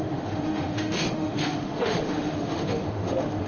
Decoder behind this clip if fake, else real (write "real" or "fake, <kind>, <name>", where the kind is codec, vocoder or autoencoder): fake, autoencoder, DAC-VAE